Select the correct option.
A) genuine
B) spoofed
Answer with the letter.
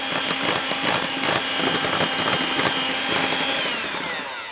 A